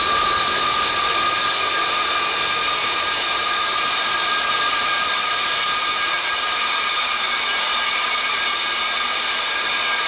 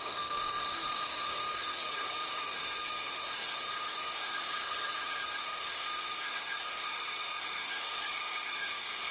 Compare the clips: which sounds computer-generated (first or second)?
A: second